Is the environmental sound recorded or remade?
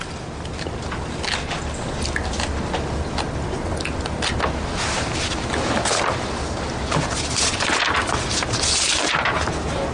recorded